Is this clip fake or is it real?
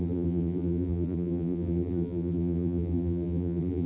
fake